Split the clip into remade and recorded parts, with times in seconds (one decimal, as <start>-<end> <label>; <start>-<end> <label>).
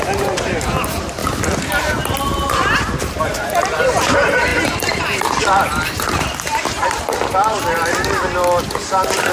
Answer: 0.0-1.2 remade; 1.2-2.9 recorded; 2.9-4.5 remade; 4.5-5.0 recorded; 5.0-9.3 remade